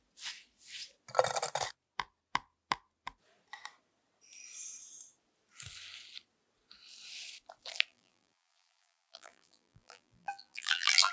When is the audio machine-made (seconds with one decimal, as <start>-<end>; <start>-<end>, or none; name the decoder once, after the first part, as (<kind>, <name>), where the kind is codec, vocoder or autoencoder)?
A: 7.9-11.1 (vocoder, BigVGAN v2)